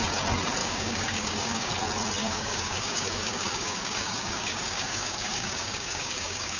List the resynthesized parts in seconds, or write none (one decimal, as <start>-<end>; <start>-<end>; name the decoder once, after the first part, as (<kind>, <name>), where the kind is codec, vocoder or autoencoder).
0.6-1.7 (codec, DAC); 2.2-6.6